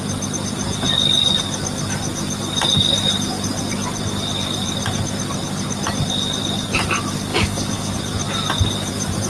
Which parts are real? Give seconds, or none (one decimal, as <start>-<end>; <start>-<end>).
0.0-7.3; 7.9-9.3

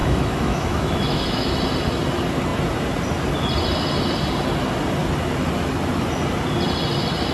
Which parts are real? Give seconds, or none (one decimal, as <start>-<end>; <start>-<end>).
1.5-7.3

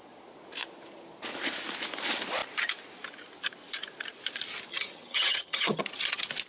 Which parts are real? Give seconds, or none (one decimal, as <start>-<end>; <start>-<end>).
0.0-4.7; 5.8-6.5

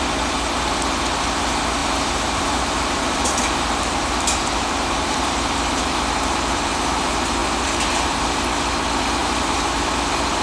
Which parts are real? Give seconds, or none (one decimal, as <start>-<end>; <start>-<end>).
0.0-1.8; 6.7-7.4; 8.4-9.2; 9.7-10.4